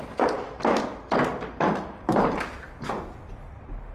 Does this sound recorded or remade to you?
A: recorded